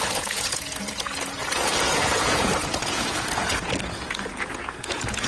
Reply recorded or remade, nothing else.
remade